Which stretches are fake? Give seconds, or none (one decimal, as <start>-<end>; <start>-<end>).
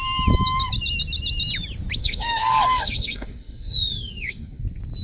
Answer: 2.0-4.6